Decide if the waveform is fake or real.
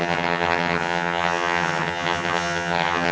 fake